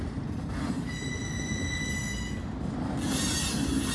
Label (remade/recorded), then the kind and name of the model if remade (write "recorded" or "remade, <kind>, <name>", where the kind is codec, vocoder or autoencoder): recorded